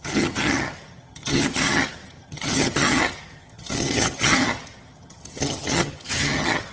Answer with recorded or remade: remade